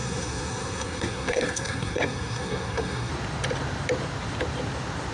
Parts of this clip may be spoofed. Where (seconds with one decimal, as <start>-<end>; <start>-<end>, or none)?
0.0-3.1

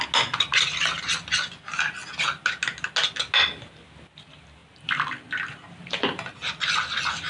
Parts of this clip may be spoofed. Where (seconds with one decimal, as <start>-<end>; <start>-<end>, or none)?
none

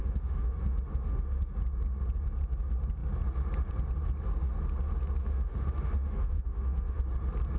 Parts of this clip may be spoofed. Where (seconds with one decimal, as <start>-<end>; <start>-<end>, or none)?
0.0-1.5; 5.2-7.0

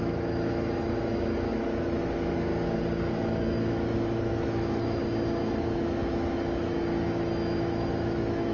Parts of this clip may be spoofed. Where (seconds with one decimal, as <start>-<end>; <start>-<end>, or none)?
0.0-2.5; 3.1-5.0; 5.6-6.7; 7.6-8.5

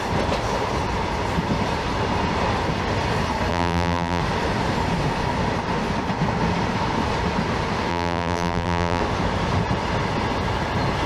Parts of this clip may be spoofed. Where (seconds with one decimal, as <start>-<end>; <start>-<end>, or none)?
3.5-4.2; 7.9-9.0